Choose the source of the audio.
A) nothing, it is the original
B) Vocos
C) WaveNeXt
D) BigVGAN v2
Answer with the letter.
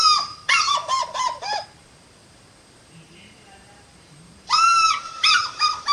D